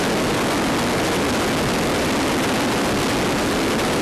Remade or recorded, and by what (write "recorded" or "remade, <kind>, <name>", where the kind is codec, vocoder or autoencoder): recorded